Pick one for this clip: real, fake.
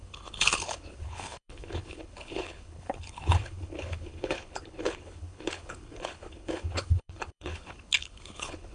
fake